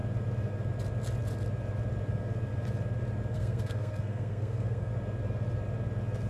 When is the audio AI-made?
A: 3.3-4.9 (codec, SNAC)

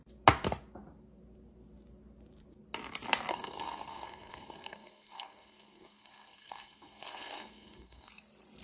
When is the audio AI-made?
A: 3.3-8.1 (codec, SNAC)

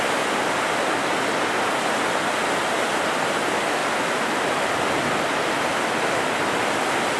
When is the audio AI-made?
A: none

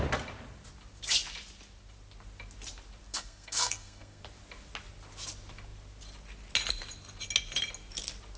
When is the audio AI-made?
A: 3.1-4.2 (codec, SNAC)

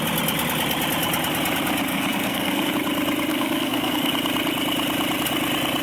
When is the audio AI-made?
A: 1.9-2.7 (codec, SNAC); 3.3-4.1